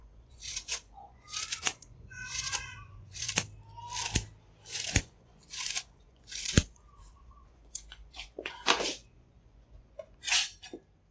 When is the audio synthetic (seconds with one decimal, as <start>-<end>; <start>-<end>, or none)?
0.0-3.3; 4.7-10.4